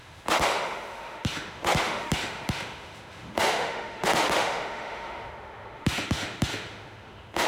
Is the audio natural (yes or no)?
no